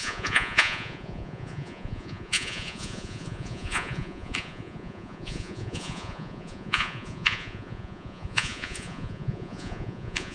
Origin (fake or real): fake